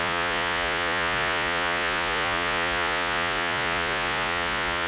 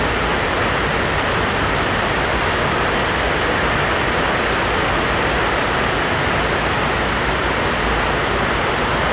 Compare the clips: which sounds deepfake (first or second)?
first